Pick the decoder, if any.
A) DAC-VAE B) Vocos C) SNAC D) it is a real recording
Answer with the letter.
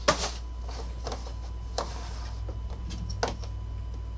D